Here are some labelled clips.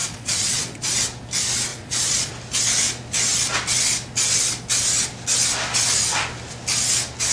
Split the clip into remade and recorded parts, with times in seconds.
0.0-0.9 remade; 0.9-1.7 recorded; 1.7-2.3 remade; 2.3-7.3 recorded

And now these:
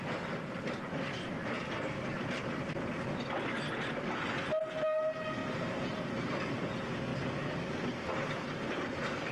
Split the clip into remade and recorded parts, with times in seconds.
0.0-9.3 recorded